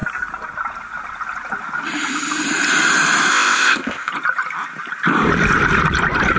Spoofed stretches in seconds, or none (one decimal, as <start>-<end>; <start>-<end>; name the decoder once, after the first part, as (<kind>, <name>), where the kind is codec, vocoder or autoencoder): 3.3-4.1 (codec, ZipCodec)